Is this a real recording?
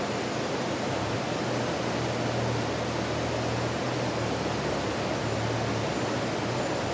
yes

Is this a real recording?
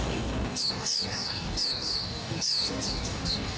no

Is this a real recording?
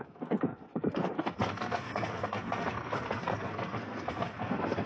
no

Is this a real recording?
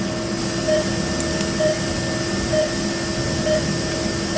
yes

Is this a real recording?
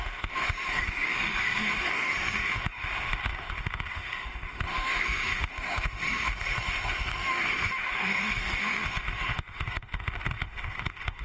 no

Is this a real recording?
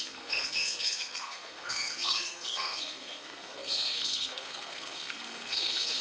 no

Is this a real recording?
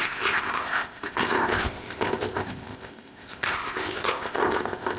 no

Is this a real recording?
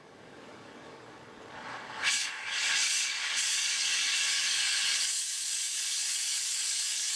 no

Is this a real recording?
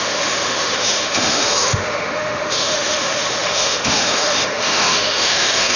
no